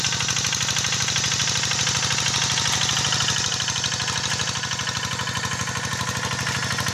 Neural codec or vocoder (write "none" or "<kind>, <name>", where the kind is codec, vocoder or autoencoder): none